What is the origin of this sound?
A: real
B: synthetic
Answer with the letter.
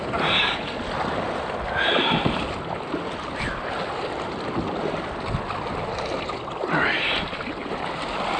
A